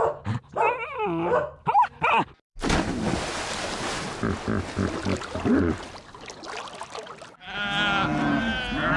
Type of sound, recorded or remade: recorded